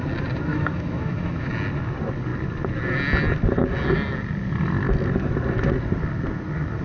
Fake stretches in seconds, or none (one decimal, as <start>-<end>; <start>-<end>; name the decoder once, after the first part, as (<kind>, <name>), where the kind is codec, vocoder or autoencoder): 0.5-1.5 (autoencoder, DAC-VAE)